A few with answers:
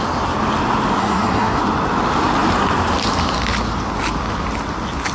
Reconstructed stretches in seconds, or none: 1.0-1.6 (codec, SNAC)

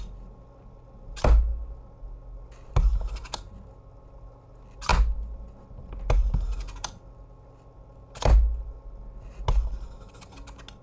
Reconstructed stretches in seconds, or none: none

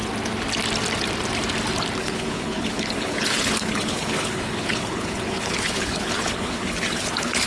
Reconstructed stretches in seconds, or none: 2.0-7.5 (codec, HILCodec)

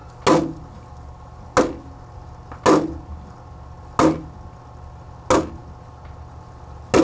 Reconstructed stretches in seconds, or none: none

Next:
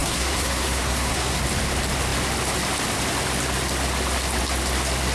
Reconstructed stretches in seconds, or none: 0.0-1.4 (codec, SNAC)